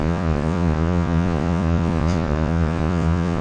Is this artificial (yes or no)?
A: yes